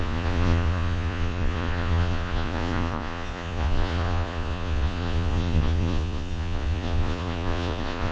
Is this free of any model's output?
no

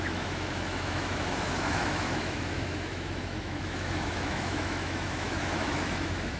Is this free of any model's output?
no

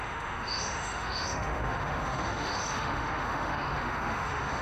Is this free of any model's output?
no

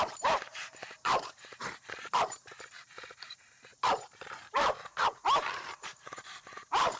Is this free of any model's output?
no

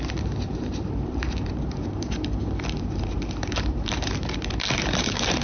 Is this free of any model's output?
no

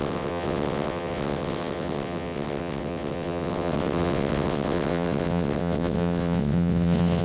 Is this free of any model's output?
no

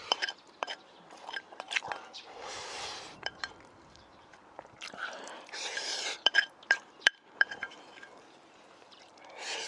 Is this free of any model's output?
no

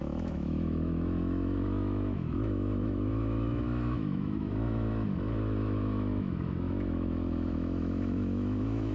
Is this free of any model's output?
no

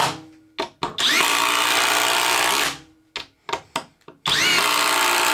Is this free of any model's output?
yes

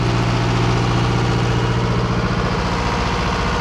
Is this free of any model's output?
yes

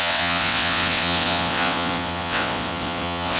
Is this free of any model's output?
no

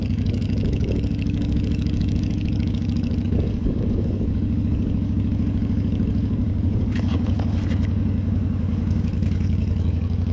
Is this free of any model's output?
no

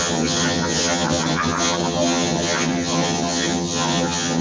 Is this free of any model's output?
no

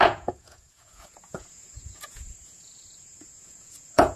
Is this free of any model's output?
no